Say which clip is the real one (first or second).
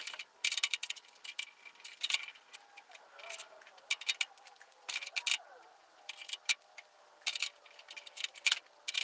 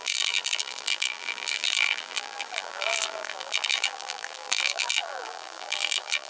first